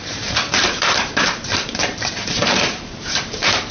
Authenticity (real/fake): fake